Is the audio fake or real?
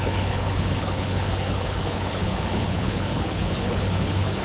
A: fake